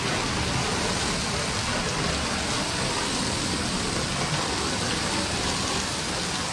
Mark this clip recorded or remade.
recorded